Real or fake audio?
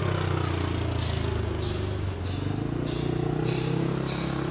real